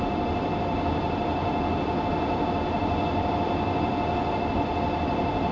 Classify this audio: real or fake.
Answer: real